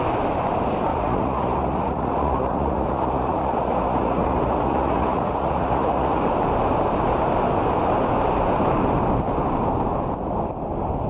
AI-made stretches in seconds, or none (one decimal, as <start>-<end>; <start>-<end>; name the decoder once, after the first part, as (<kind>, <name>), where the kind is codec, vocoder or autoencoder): 0.9-6.2 (vocoder, Vocos)